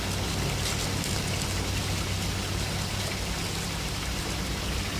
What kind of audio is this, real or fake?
real